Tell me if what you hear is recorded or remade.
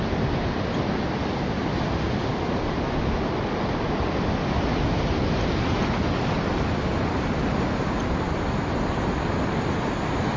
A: recorded